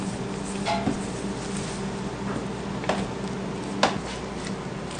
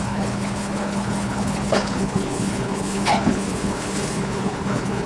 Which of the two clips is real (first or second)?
first